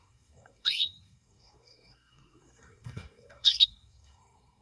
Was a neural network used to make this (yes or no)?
yes